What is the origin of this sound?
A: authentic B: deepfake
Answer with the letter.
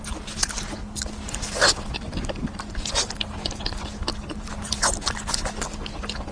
A